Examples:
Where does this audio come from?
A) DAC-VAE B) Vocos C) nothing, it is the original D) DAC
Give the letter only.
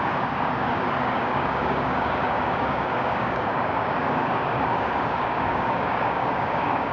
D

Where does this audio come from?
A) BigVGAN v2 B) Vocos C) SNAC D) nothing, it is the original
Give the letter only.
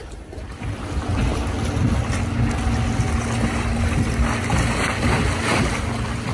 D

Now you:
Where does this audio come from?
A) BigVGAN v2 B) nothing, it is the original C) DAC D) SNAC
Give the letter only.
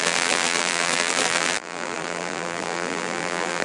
A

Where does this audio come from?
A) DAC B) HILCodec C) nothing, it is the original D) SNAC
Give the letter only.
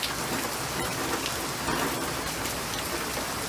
C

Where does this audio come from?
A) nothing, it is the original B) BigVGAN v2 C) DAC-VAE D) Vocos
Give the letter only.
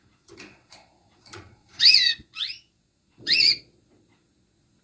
D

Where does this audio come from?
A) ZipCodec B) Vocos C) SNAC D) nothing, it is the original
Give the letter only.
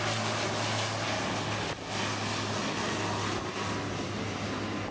D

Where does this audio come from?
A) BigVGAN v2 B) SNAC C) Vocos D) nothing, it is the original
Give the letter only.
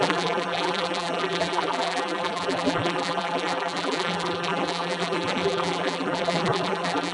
A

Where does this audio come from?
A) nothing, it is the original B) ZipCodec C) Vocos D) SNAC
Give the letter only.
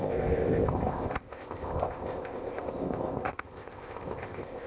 B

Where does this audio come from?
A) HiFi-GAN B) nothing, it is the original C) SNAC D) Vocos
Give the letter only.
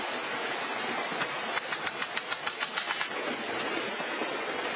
B